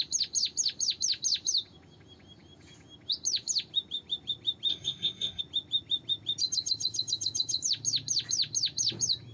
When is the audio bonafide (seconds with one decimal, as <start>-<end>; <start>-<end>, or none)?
0.0-4.7; 5.4-9.3